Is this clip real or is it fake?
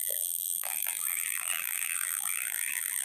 fake